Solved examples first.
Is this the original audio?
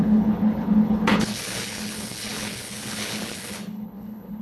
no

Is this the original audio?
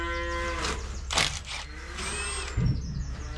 yes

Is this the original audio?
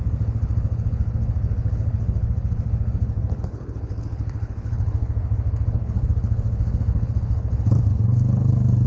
no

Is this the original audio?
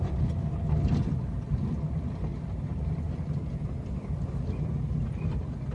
yes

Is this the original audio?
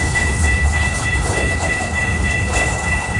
no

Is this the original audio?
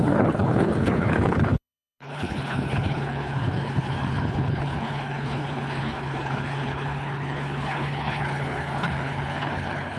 no